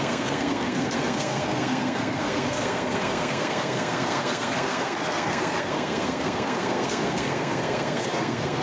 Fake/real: fake